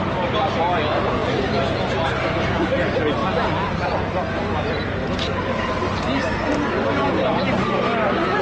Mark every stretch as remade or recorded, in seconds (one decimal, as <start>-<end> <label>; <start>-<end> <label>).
0.0-6.5 recorded; 6.5-7.3 remade; 7.3-8.4 recorded